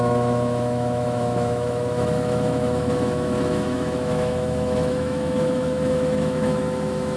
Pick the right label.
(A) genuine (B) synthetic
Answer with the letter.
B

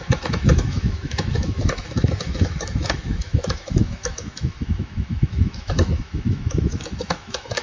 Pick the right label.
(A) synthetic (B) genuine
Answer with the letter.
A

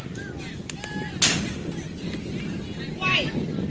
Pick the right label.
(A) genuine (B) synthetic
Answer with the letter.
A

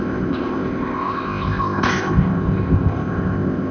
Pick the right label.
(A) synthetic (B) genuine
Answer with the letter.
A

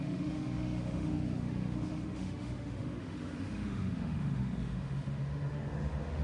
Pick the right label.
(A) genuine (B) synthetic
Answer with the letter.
B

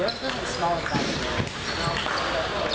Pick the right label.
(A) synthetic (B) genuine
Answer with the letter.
B